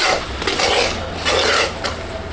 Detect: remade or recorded recorded